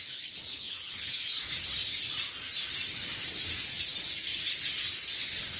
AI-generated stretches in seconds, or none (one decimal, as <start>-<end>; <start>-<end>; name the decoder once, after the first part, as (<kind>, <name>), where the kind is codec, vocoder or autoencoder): 0.5-1.1 (codec, HILCodec)